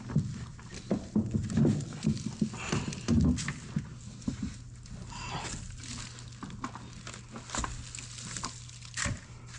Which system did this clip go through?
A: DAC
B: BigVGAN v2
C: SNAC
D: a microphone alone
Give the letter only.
D